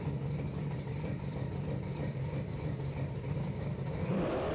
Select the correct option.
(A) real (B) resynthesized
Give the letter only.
B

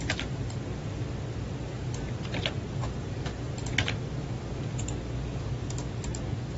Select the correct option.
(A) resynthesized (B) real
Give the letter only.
B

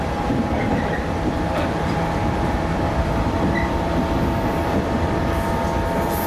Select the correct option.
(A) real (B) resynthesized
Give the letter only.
B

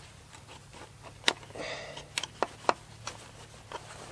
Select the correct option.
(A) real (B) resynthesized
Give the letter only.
A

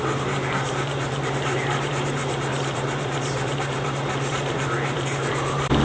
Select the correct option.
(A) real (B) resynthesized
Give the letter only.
B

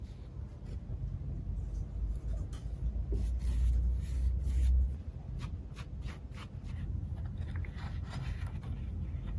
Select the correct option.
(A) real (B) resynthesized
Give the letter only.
A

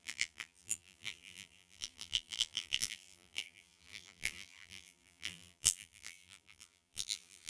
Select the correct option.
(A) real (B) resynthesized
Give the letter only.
B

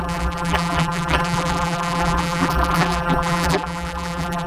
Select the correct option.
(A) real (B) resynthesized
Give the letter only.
B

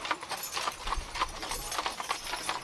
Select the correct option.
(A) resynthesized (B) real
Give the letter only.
B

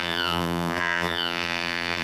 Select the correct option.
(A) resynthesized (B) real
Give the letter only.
A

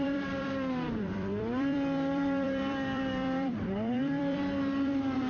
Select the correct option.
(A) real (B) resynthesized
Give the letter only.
B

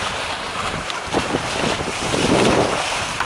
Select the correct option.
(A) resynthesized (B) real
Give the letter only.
A